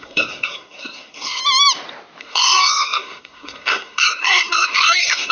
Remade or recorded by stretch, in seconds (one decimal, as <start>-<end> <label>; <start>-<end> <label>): 0.0-1.4 remade; 1.4-2.2 recorded; 2.2-5.3 remade